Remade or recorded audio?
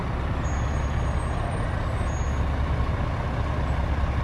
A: recorded